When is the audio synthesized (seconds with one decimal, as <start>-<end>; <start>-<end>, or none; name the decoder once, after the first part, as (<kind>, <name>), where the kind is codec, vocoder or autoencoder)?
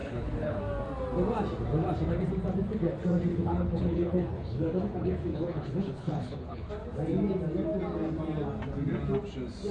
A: 0.0-0.6 (codec, HILCodec); 3.3-6.7